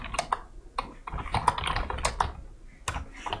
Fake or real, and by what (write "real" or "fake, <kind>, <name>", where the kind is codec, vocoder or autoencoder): real